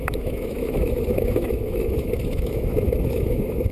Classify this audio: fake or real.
fake